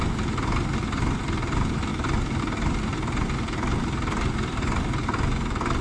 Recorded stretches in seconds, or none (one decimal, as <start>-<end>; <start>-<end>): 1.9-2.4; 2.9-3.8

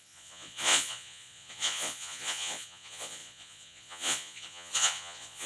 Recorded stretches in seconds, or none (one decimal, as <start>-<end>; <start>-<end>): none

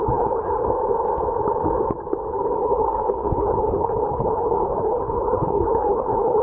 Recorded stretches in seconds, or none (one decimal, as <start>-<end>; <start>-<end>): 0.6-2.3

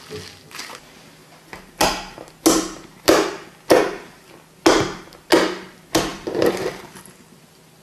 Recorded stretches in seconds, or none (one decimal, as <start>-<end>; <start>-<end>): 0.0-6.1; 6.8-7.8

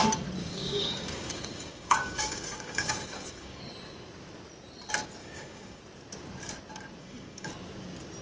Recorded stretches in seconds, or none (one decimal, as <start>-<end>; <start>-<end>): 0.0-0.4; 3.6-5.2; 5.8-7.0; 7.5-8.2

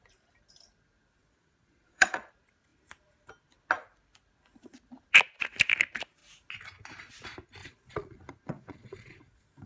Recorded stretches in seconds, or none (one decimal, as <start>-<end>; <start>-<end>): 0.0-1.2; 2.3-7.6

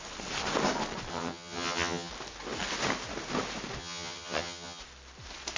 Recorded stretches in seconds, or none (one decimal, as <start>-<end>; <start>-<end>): 0.0-1.1; 2.1-3.8; 4.8-5.6